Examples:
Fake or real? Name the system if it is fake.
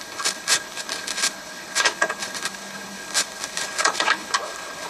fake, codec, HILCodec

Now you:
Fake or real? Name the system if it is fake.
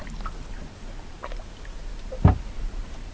real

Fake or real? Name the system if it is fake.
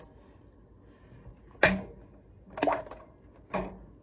real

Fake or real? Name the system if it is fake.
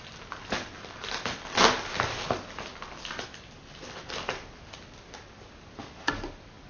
real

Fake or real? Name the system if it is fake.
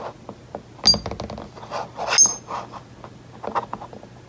real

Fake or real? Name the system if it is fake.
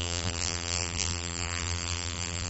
fake, vocoder, BigVGAN v2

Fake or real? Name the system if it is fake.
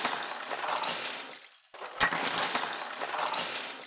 real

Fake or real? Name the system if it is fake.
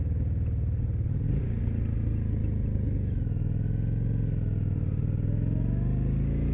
real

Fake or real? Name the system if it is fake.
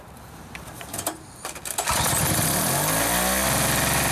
real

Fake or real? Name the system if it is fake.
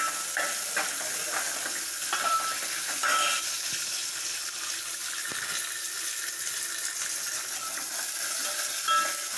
real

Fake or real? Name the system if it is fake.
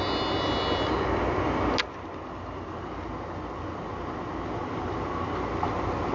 real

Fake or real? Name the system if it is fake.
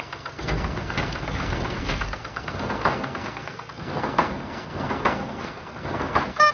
fake, codec, SNAC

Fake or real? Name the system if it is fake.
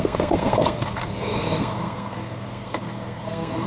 fake, codec, SNAC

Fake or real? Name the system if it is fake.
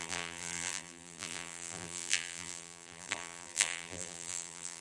fake, vocoder, BigVGAN v2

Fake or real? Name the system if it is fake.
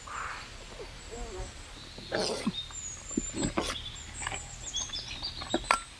real